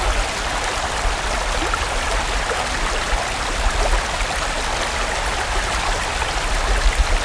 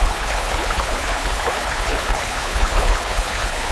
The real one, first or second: first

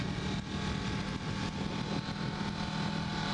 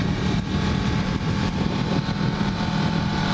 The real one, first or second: first